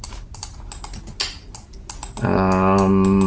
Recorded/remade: recorded